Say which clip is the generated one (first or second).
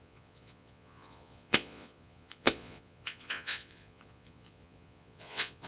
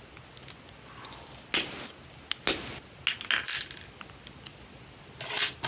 first